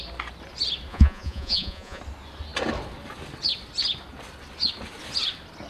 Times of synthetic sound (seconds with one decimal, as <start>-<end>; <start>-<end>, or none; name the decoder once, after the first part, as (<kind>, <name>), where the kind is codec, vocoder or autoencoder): 0.9-2.0 (vocoder, Vocos)